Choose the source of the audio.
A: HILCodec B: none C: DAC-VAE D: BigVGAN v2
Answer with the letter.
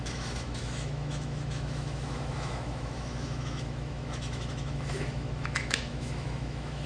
C